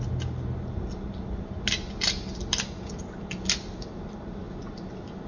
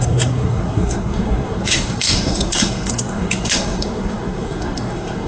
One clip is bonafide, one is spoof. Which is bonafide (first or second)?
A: first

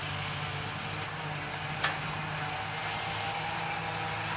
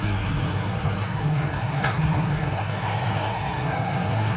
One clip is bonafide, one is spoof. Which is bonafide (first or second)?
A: first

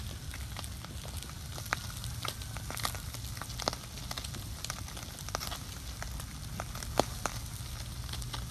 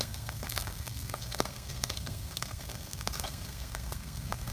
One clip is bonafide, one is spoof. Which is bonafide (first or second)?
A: first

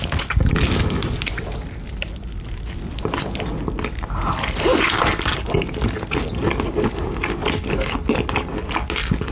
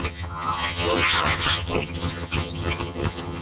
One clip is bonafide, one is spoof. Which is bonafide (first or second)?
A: first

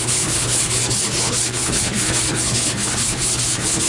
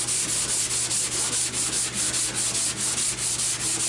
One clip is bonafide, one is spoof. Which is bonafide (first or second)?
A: second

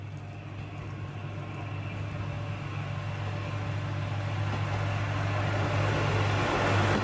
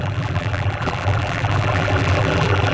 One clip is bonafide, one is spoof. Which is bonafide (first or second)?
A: first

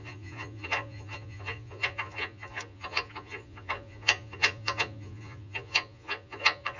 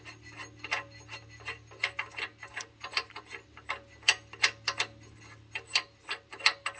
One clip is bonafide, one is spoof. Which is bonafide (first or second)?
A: second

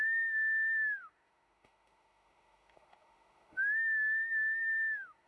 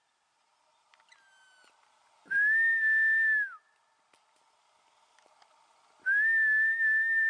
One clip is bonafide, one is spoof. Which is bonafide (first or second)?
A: second